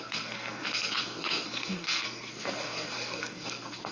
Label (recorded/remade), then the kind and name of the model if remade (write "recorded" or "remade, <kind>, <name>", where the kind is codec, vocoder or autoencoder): remade, codec, SNAC